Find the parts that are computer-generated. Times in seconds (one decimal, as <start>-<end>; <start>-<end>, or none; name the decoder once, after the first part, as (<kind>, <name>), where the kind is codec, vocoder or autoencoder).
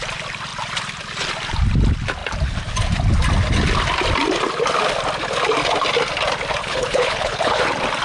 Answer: 6.6-7.6 (codec, HILCodec)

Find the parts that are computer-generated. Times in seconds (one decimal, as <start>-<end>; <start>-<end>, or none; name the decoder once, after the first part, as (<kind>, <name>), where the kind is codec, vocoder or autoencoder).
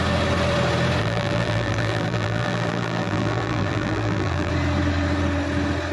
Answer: 1.0-4.5 (vocoder, BigVGAN v2)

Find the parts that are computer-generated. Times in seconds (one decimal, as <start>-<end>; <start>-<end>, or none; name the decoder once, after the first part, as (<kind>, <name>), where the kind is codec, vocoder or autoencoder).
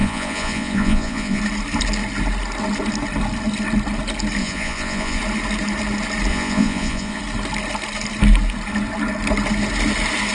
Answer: 0.0-1.4 (vocoder, Vocos); 4.4-5.2; 6.3-7.2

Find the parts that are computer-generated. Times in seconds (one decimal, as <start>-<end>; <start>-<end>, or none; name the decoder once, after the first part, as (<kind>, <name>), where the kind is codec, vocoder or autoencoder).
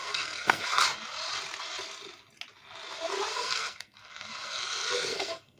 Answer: 0.0-0.8 (codec, SNAC); 3.3-5.6